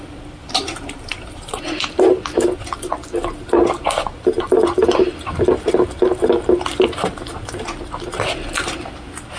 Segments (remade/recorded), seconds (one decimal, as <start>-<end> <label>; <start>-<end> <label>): 0.0-0.4 recorded; 0.4-2.0 remade; 2.0-9.4 recorded